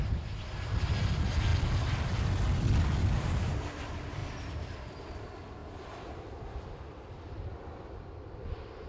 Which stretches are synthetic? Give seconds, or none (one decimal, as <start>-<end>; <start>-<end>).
none